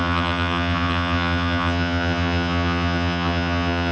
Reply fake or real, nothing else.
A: fake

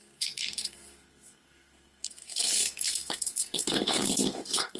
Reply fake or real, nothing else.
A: fake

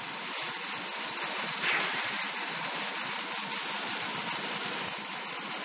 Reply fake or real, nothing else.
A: real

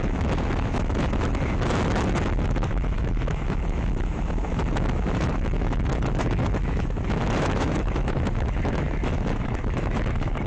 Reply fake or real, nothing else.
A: fake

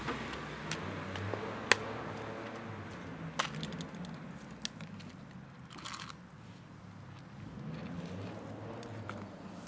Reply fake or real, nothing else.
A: real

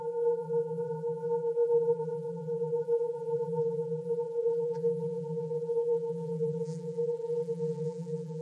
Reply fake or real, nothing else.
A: fake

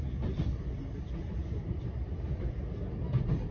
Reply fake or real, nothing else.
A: real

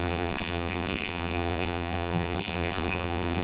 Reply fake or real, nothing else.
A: fake